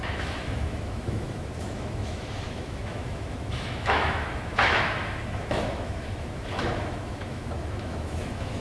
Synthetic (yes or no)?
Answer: yes